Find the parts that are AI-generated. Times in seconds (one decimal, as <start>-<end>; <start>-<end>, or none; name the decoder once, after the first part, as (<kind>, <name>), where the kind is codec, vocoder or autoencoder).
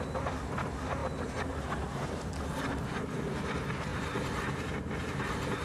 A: none